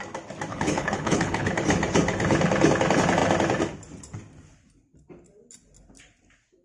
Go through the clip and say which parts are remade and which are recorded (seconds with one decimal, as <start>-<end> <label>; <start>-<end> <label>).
0.0-0.5 recorded; 0.5-1.5 remade; 1.5-6.6 recorded